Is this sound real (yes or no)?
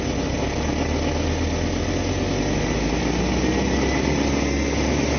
yes